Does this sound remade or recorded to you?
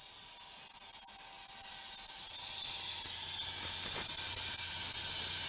recorded